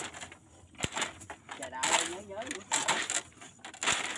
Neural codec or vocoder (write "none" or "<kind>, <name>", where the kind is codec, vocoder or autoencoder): none